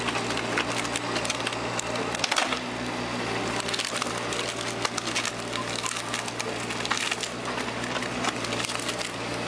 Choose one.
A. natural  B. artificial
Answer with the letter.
A